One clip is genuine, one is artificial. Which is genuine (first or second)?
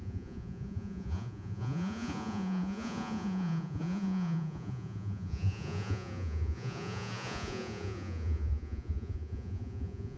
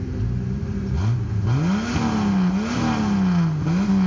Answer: second